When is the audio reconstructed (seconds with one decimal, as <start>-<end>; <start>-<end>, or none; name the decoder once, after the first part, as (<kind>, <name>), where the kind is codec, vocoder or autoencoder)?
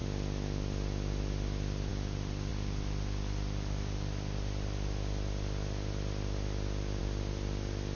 none